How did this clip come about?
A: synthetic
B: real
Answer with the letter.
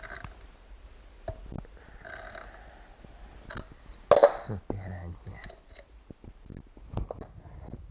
B